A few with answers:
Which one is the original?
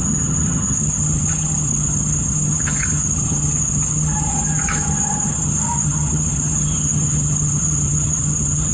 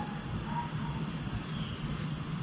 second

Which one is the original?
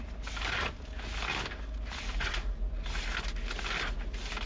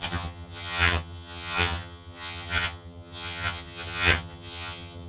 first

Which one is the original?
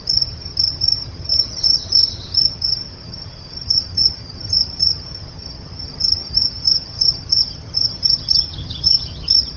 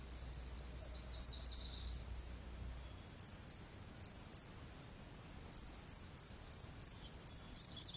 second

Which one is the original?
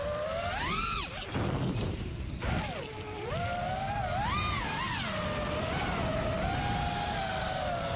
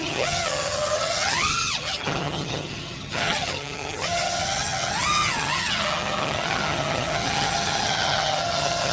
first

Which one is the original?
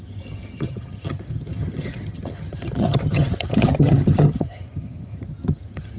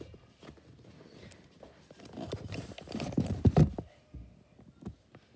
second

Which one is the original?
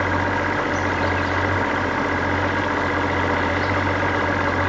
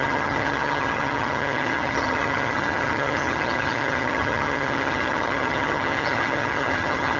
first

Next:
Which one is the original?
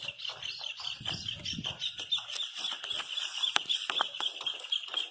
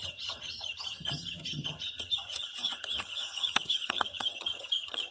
first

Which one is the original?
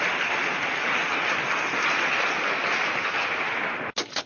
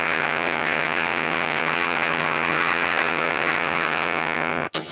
first